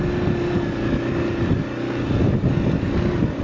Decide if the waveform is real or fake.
real